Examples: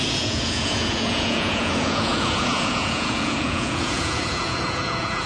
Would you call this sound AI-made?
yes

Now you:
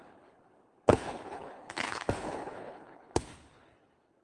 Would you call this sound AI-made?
yes